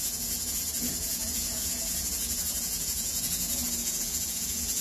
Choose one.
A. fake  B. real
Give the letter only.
A